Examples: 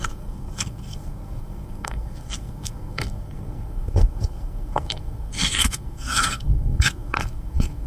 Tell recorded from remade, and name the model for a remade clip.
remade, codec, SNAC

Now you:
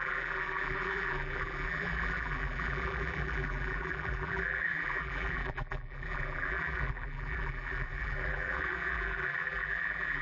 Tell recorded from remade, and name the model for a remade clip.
remade, vocoder, BigVGAN v2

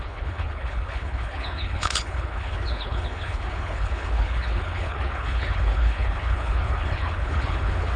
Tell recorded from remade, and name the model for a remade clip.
remade, codec, HILCodec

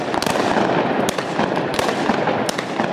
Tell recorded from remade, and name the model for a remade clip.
recorded